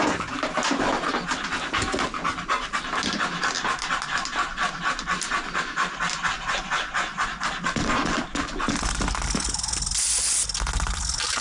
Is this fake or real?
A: real